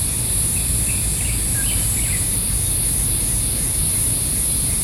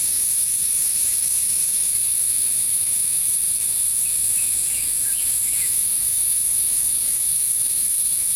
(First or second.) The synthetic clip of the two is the second